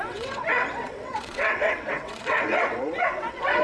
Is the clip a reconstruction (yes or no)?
yes